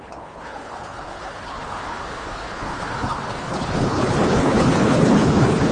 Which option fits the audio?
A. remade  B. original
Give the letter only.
A